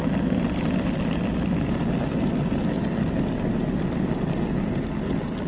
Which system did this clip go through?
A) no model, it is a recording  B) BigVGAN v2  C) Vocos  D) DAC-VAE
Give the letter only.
A